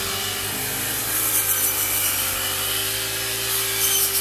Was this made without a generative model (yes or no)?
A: yes